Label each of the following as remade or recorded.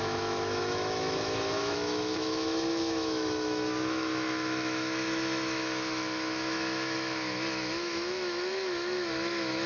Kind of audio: remade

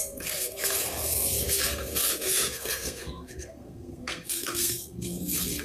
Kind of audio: remade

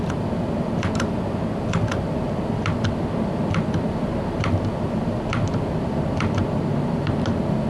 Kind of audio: recorded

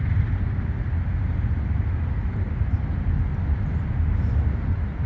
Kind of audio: recorded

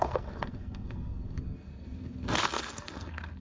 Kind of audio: remade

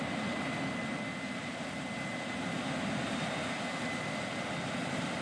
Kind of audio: recorded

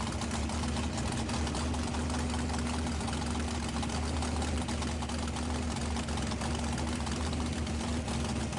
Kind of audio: recorded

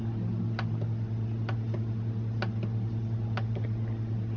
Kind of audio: recorded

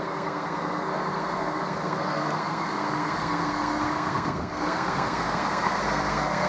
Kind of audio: remade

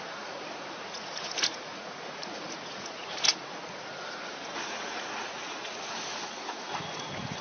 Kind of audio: remade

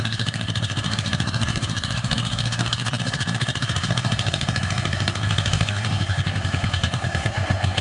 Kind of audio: remade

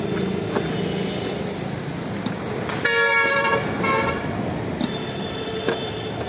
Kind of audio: recorded